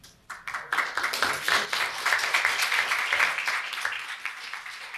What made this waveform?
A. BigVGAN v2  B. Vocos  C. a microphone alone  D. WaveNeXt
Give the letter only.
C